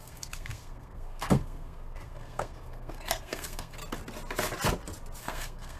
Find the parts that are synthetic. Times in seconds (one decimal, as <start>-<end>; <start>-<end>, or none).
0.0-3.8; 5.2-5.8